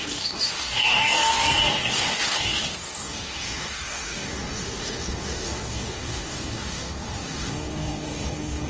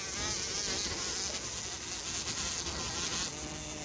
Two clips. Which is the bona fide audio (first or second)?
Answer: second